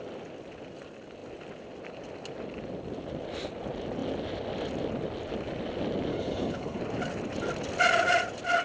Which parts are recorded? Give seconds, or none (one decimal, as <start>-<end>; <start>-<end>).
0.0-6.1; 6.8-8.6